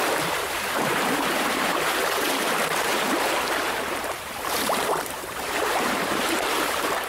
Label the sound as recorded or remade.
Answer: remade